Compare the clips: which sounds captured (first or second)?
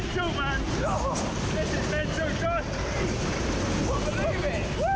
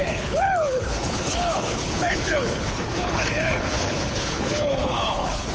first